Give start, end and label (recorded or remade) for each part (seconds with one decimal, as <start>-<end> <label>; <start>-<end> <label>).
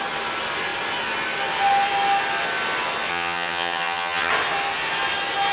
0.0-3.1 recorded; 3.1-4.3 remade; 4.3-5.5 recorded